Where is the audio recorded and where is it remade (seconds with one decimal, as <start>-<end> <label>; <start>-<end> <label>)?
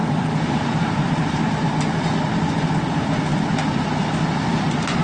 0.0-1.7 remade; 1.7-5.0 recorded